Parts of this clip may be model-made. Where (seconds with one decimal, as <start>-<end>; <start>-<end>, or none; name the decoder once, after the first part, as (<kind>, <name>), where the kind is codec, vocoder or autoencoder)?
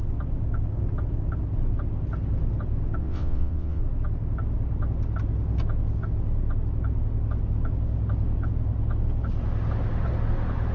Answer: 3.0-3.8 (vocoder, WaveNeXt)